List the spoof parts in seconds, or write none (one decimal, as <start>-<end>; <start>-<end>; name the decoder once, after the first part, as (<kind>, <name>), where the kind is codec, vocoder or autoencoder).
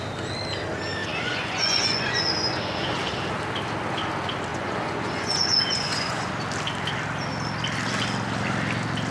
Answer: 1.0-3.1 (vocoder, Vocos); 4.5-6.3